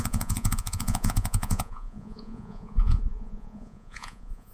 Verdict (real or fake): fake